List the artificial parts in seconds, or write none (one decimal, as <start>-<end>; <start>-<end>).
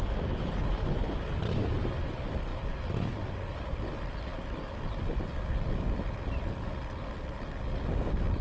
none